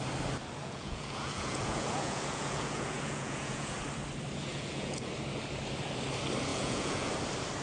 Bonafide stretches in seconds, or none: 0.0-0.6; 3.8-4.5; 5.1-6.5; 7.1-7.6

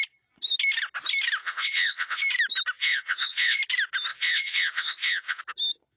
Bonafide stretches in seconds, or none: 0.0-1.4; 2.2-2.8; 3.6-4.1; 5.4-6.0

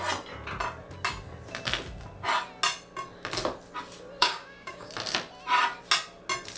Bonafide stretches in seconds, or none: 0.0-4.2; 4.9-6.6

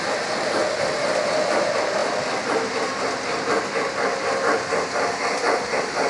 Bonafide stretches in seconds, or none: 0.0-6.1

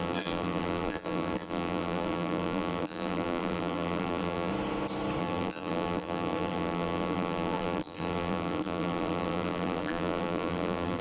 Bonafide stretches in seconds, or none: 4.5-5.2

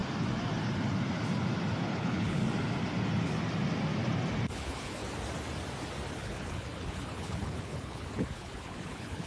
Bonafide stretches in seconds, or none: 0.0-1.8; 2.4-4.5; 5.0-6.1

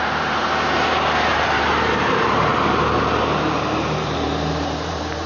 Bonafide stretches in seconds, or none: 2.5-3.6